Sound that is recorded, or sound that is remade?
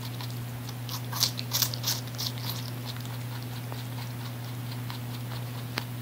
recorded